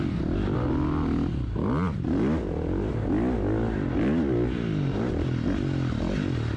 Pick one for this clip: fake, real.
real